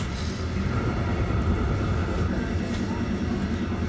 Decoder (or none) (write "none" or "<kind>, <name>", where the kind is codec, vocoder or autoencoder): none